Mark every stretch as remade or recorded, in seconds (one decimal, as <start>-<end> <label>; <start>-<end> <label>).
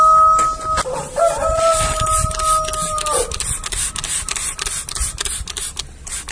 0.0-6.3 recorded